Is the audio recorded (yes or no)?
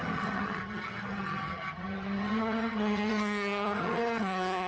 no